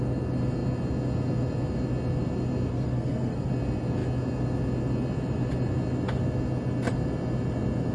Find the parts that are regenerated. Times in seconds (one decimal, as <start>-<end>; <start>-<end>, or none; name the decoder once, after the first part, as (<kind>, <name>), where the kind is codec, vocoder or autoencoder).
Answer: 2.7-3.5 (codec, SNAC)